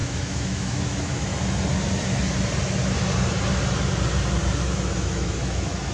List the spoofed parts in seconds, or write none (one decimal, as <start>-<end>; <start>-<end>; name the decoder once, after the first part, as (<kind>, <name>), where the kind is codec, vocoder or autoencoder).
0.0-1.3 (autoencoder, DAC-VAE); 4.6-5.9